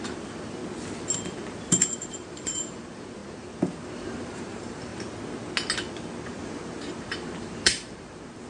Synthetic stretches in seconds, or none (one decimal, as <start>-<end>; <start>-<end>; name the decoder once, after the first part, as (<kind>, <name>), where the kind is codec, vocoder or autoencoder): 0.0-0.6 (vocoder, BigVGAN v2); 1.3-4.9; 6.2-8.5